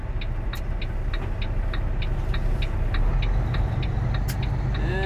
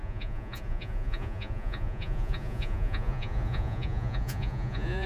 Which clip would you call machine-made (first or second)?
second